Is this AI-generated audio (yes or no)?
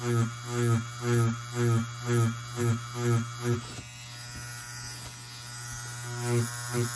no